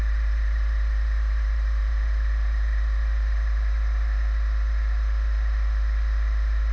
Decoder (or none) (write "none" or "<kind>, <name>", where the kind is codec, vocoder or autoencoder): vocoder, BigVGAN v2